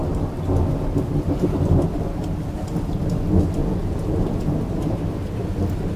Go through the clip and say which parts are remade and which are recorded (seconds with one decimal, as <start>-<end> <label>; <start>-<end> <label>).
0.0-3.6 recorded; 3.6-4.6 remade; 4.6-6.0 recorded

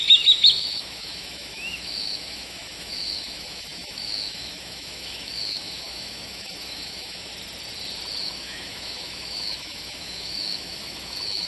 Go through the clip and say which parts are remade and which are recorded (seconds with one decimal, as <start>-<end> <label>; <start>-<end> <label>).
0.0-7.3 remade; 7.3-8.2 recorded; 8.2-11.5 remade